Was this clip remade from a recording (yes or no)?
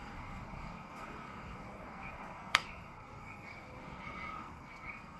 yes